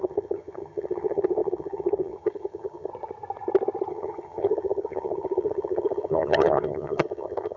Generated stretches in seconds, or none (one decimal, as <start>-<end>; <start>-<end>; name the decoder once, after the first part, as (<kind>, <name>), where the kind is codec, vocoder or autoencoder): 0.0-2.9 (vocoder, HiFi-GAN); 3.9-7.6